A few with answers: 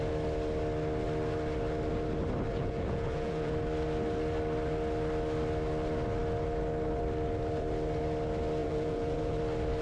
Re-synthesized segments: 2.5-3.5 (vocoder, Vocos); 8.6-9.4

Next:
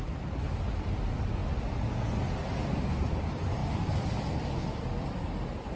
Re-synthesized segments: 0.0-1.4 (vocoder, BigVGAN v2); 2.9-3.6

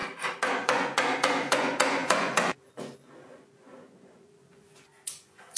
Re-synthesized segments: 0.5-5.6 (vocoder, Vocos)

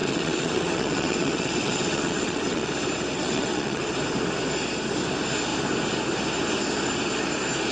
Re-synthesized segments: 0.0-2.7 (vocoder, WaveNeXt); 3.1-3.9

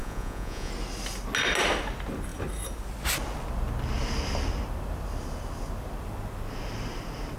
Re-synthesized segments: 0.0-0.7 (vocoder, Vocos)